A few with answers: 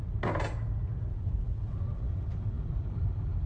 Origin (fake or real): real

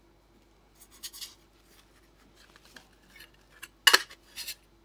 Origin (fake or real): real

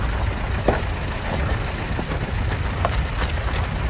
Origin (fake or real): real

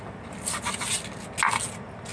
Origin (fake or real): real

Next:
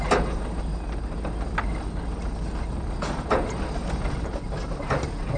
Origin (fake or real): real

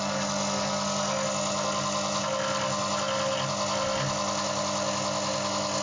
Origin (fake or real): real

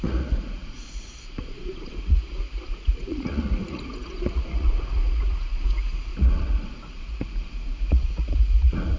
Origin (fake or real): fake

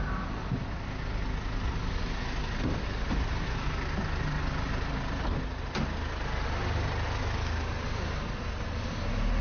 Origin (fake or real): real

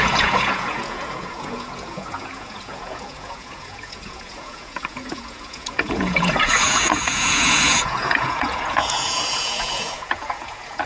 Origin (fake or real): fake